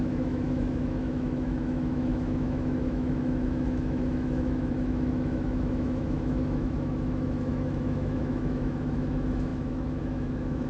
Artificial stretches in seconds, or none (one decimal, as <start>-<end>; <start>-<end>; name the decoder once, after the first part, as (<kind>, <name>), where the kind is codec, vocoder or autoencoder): 0.0-10.7 (autoencoder, DAC-VAE)

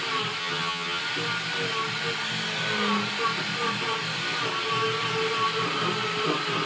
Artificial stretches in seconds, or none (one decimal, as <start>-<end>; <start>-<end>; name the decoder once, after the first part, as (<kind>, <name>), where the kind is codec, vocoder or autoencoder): 0.4-1.0 (vocoder, HiFi-GAN)

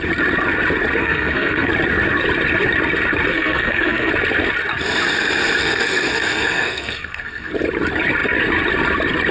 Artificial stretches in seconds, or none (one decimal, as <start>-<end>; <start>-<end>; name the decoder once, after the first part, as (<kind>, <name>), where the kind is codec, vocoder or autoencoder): 1.0-1.7 (codec, SNAC); 3.3-4.1; 5.6-7.5

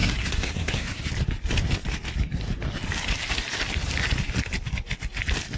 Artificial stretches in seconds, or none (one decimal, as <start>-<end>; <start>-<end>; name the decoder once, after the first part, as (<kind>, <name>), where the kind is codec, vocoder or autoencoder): 0.0-1.1 (codec, SNAC)